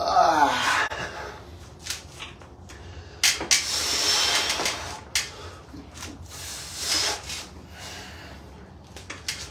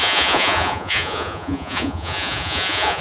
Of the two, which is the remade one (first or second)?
second